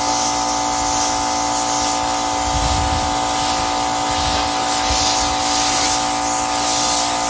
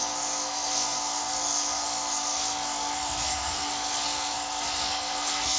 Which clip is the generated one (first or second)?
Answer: second